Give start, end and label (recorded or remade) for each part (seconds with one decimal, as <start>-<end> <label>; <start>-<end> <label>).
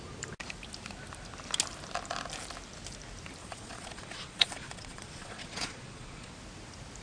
0.0-3.4 recorded; 3.4-6.3 remade; 6.3-7.0 recorded